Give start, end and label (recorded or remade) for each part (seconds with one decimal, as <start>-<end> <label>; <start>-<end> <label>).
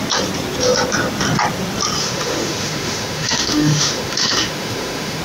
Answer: 0.0-2.0 recorded; 2.0-5.2 remade